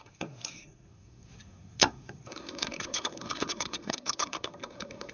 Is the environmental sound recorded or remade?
remade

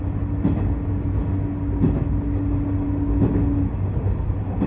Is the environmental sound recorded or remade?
recorded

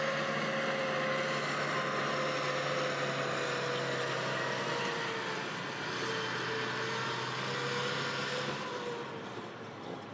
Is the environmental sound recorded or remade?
recorded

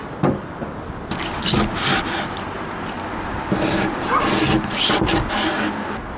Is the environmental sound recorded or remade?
recorded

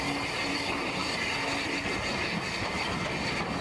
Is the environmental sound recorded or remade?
recorded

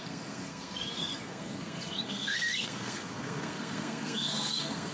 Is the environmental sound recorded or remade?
remade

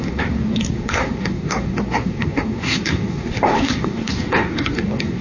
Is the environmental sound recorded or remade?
remade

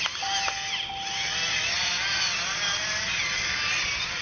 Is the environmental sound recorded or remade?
recorded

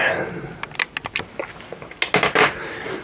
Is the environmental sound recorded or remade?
recorded